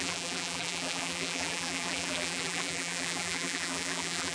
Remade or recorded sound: remade